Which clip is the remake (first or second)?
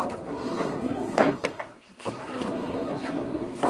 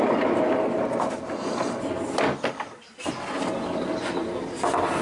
first